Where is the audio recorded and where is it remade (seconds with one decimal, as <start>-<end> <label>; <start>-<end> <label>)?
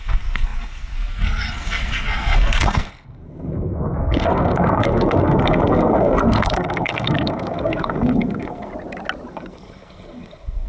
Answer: 0.0-8.7 remade; 8.7-9.3 recorded; 9.3-10.7 remade